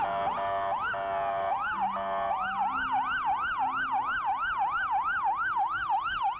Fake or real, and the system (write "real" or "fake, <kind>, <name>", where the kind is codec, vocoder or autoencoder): real